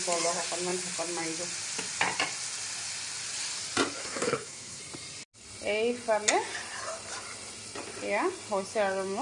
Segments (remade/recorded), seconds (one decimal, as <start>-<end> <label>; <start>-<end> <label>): 0.0-4.0 recorded; 4.0-4.8 remade; 4.8-9.2 recorded